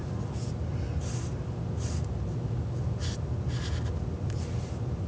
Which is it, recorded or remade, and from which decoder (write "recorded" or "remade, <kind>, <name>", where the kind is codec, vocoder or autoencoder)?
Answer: recorded